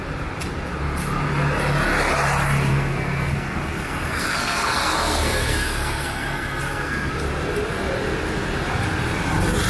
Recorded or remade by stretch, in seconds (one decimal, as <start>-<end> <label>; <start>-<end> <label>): 0.0-2.7 recorded; 2.7-7.1 remade; 7.1-9.7 recorded